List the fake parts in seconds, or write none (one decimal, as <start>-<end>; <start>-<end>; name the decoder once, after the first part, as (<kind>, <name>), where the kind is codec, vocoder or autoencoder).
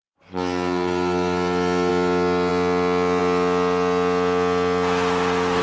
none